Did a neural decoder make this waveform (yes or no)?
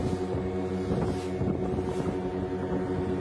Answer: no